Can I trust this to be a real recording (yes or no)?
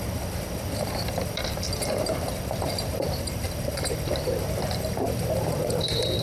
no